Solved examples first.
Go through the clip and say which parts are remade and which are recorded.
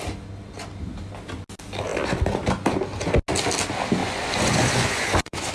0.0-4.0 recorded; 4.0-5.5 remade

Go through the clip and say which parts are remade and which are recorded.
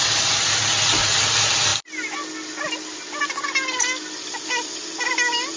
0.0-5.6 recorded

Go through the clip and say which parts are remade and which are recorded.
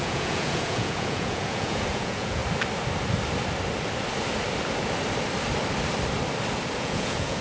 0.0-2.4 remade; 2.4-6.8 recorded; 6.8-7.4 remade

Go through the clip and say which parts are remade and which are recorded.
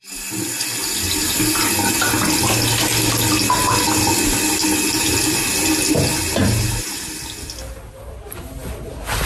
0.0-6.4 recorded; 6.4-7.1 remade; 7.1-9.3 recorded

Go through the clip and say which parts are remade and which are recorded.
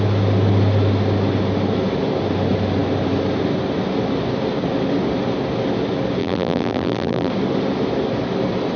0.0-6.2 recorded; 6.2-7.3 remade; 7.3-8.8 recorded